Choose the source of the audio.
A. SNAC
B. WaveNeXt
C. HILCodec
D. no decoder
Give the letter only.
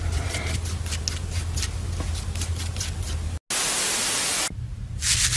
D